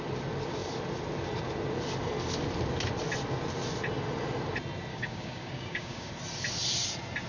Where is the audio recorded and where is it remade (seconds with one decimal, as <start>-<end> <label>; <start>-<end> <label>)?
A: 0.0-4.9 recorded; 4.9-6.1 remade; 6.1-7.3 recorded